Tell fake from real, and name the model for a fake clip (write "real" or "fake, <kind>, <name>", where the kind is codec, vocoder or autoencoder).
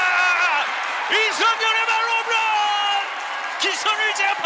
real